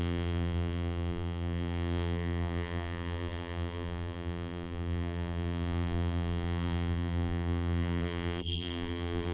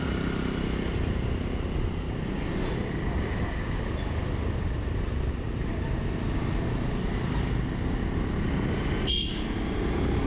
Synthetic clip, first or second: first